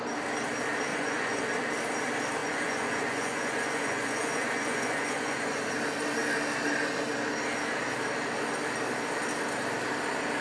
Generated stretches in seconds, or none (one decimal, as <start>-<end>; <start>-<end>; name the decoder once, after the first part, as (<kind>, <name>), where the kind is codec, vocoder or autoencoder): 0.9-1.4 (vocoder, Vocos); 2.4-5.6